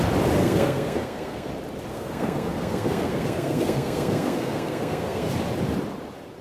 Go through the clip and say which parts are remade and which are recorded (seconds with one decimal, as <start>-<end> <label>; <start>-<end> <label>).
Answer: 0.0-0.4 recorded; 0.4-1.5 remade; 1.5-1.9 recorded; 1.9-5.3 remade; 5.3-6.4 recorded